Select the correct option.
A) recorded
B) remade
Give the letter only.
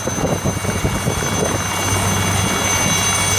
A